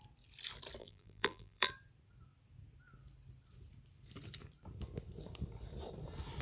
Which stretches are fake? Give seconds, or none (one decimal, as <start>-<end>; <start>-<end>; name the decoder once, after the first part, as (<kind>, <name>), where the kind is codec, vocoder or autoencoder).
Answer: 0.8-1.7 (vocoder, BigVGAN v2)